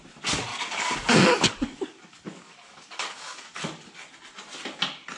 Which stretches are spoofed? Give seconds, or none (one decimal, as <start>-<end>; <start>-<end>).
0.5-3.6